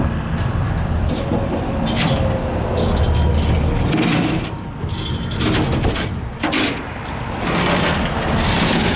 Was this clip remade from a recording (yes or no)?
no